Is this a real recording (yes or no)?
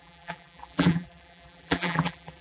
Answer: no